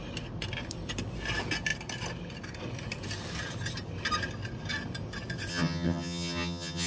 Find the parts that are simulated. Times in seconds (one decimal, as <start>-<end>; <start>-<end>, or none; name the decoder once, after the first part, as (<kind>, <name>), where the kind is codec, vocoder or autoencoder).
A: 5.5-6.9 (vocoder, HiFi-GAN)